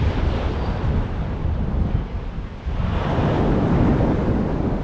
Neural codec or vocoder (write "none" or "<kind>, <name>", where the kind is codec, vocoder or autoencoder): none